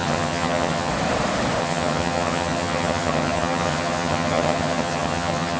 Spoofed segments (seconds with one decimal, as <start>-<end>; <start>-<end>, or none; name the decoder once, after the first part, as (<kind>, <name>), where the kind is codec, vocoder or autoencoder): 0.0-0.9 (vocoder, HiFi-GAN); 1.6-5.6

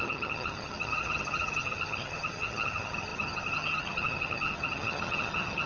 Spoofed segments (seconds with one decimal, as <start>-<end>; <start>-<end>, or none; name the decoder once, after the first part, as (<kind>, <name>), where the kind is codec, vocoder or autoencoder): 0.0-5.7 (vocoder, HiFi-GAN)